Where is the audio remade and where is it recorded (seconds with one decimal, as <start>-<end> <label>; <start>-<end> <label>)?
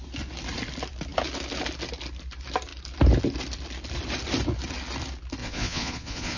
0.0-5.4 recorded; 5.4-6.4 remade